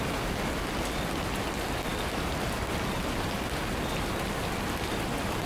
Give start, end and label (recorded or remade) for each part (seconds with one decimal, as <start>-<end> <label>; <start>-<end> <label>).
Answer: 0.0-5.5 recorded